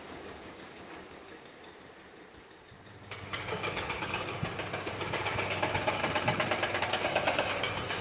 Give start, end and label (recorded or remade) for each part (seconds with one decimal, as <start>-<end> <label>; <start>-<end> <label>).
0.0-1.6 remade; 1.6-2.4 recorded; 2.4-6.0 remade; 6.0-6.8 recorded; 6.8-8.0 remade